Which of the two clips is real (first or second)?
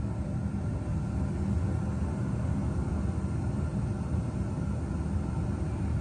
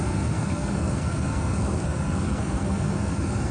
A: first